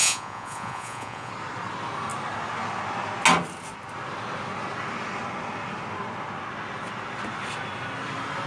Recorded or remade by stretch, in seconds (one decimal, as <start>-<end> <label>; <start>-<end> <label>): 0.0-1.3 remade; 1.3-8.5 recorded